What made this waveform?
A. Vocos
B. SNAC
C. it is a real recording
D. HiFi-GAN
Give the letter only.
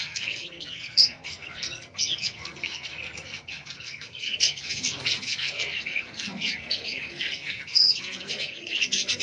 B